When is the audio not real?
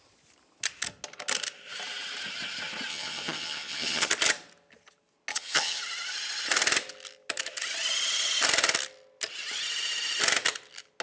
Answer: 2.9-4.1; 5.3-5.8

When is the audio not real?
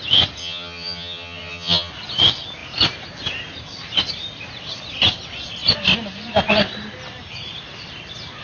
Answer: 0.4-1.9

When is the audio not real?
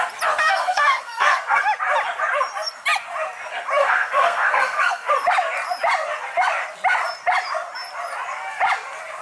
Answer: 0.4-1.6; 3.8-5.1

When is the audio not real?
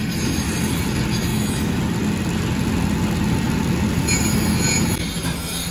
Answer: 1.3-1.8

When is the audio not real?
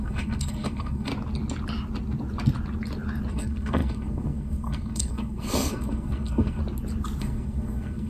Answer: 0.0-1.1; 3.3-6.6; 7.2-8.1